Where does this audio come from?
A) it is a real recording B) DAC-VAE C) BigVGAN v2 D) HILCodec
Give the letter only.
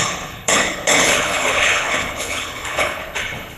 D